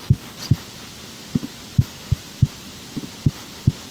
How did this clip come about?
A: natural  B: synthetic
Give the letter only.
A